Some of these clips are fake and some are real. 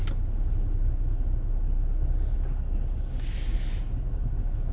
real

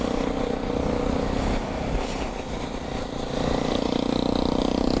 real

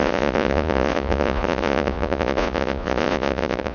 fake